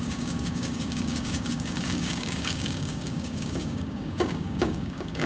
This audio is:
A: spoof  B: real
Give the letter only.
A